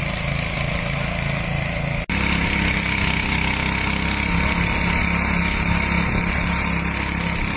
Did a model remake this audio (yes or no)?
no